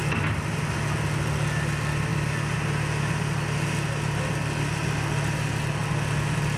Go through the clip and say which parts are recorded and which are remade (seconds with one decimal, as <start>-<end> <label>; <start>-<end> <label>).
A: 0.0-6.6 recorded